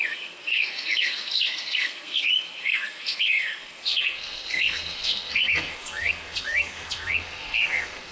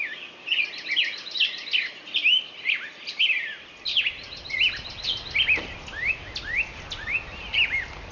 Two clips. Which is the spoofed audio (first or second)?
first